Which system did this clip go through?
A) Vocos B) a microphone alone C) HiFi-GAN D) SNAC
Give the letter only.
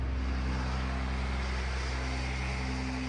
B